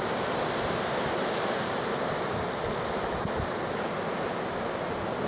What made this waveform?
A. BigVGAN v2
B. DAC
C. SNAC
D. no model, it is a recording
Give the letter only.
D